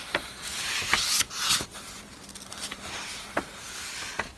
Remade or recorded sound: recorded